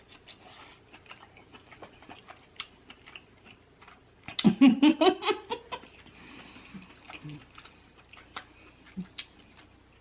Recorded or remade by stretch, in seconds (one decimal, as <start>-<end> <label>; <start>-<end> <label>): 0.0-10.0 recorded

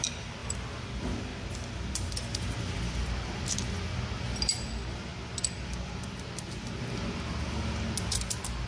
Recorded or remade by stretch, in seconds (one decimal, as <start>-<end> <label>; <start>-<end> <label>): 0.0-8.7 recorded